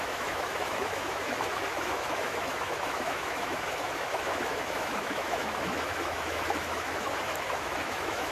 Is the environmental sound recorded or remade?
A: remade